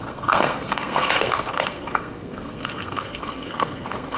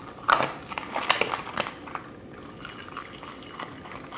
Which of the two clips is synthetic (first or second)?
first